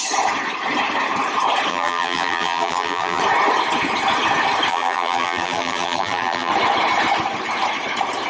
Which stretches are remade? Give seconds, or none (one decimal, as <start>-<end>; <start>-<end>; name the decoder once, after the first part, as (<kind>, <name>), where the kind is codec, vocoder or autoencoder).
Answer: 1.7-3.2 (vocoder, BigVGAN v2); 4.7-6.5